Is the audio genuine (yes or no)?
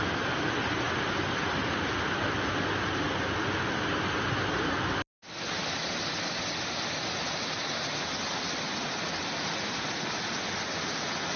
yes